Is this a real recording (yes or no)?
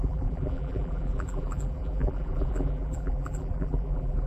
no